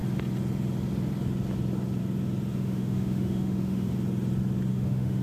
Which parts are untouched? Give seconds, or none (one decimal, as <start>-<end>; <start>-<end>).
0.0-2.5; 3.9-4.7